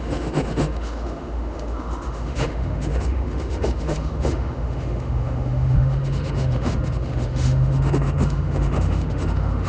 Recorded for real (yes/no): no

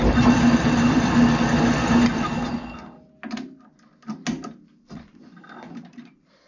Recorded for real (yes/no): yes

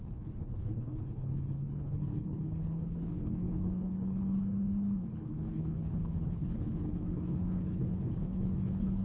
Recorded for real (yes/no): no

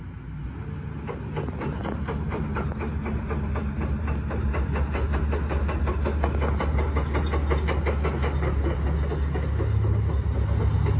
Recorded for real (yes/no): yes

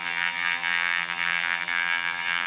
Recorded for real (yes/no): no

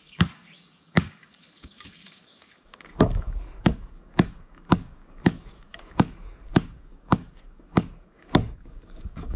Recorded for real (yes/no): no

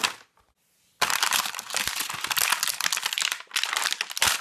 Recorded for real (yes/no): yes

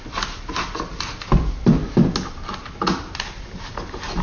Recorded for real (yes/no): yes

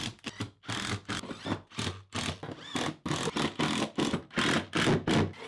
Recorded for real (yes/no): yes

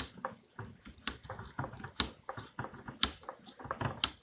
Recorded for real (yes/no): yes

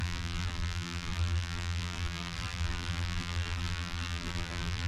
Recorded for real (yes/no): no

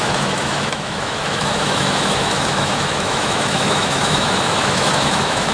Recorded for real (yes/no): no